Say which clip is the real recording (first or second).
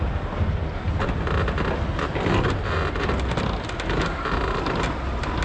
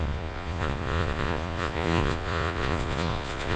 first